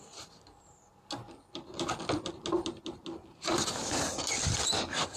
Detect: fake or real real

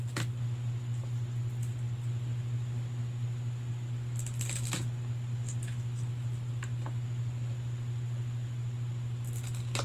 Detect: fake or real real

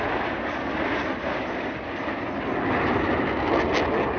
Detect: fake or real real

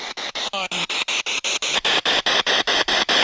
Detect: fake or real fake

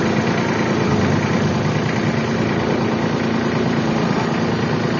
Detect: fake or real real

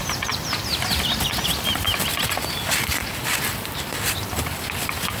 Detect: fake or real fake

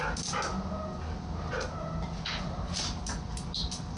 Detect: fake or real real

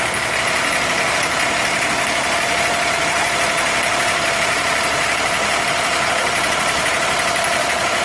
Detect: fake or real fake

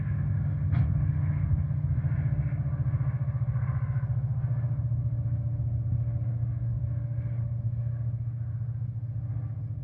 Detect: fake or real real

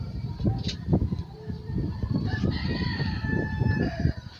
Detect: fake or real fake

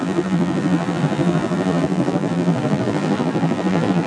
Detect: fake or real fake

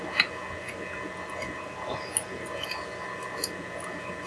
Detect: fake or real real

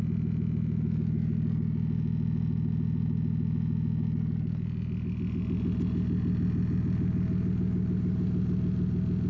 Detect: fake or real real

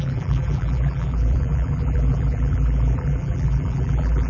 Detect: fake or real fake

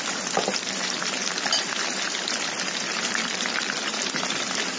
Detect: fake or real fake